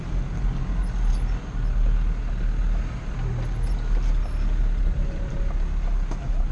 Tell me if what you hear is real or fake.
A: real